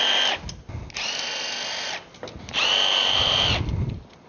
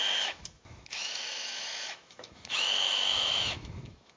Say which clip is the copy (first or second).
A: second